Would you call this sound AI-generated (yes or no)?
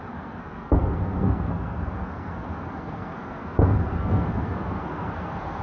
yes